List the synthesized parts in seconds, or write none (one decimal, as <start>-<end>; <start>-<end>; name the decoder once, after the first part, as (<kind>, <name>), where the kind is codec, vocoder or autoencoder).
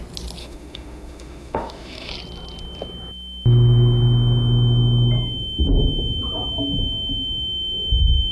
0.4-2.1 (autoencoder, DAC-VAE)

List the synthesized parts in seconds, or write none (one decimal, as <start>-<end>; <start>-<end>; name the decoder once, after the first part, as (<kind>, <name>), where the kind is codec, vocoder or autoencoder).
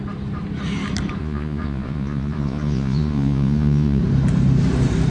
1.2-4.0 (vocoder, Vocos)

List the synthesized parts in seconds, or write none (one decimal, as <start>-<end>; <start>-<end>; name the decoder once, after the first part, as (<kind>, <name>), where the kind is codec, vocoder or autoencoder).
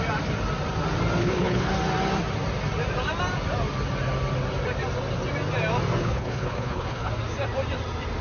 1.2-1.7 (codec, HILCodec); 6.0-7.1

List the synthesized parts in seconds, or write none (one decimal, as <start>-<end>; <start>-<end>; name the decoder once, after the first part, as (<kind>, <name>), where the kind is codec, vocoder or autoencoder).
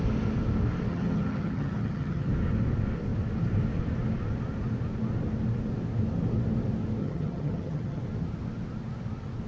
0.9-2.3 (vocoder, HiFi-GAN); 7.0-8.0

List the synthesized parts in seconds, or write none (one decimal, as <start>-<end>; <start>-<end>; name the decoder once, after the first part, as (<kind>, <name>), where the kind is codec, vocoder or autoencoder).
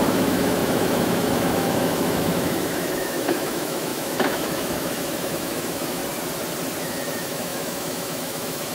0.0-6.0 (autoencoder, DAC-VAE); 6.8-8.7